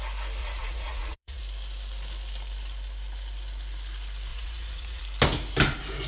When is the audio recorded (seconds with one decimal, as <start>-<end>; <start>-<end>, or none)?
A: 0.0-0.4; 1.4-4.3; 5.0-6.1

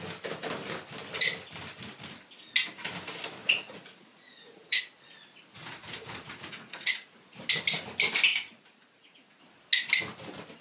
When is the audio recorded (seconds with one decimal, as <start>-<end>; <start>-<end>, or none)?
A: 0.0-3.4; 4.8-5.6; 7.2-8.3; 9.4-10.6

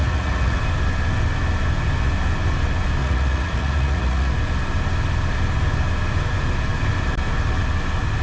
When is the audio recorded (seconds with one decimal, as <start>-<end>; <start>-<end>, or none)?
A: 0.6-3.0; 4.3-8.2

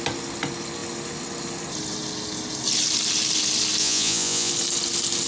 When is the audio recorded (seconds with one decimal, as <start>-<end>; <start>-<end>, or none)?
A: 0.0-3.8; 4.5-5.3

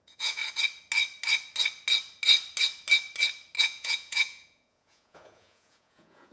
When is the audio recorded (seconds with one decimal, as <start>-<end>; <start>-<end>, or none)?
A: 0.4-3.6

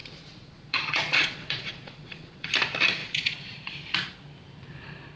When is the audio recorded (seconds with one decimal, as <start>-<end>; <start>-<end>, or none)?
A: 2.5-3.0; 3.7-5.2

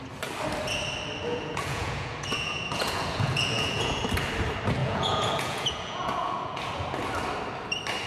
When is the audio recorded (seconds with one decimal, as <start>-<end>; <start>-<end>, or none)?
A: 0.0-1.3; 4.0-4.8; 6.6-8.1